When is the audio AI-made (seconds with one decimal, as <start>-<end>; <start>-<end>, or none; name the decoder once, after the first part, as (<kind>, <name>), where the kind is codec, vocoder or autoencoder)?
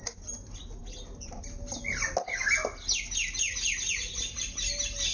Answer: none